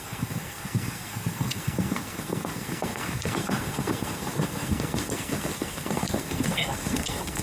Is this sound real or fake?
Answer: fake